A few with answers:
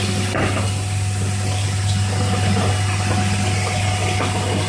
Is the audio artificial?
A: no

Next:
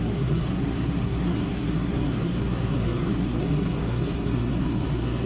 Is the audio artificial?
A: yes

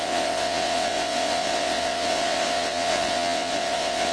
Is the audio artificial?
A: yes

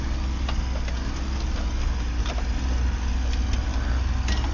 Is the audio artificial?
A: no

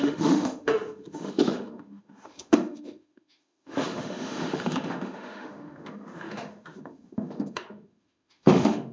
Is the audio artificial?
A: yes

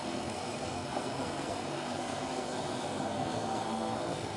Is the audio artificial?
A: yes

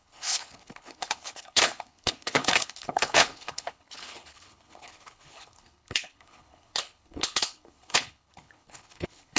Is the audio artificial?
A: yes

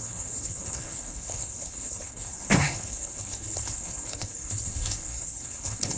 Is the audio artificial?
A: yes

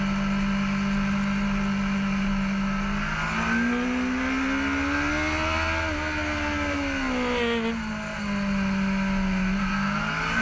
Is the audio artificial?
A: no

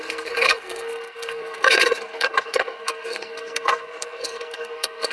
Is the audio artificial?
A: yes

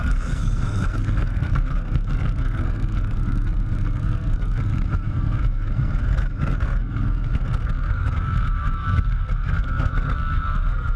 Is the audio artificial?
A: yes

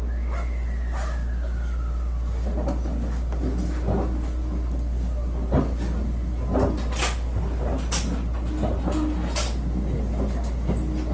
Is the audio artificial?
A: no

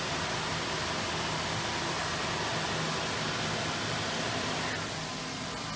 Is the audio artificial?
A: no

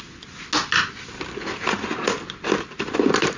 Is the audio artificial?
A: no